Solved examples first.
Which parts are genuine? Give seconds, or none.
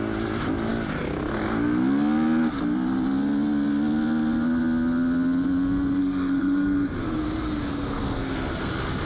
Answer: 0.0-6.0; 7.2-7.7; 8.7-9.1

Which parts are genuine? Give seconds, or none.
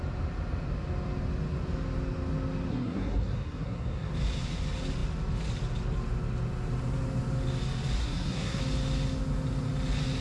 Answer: 0.0-2.7; 4.1-8.0; 8.6-10.2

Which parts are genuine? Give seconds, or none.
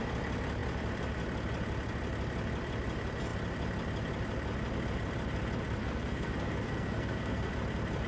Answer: 0.0-5.8; 7.5-8.1